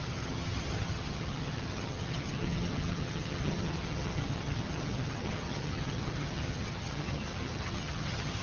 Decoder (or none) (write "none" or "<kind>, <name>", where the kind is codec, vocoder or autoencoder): vocoder, HiFi-GAN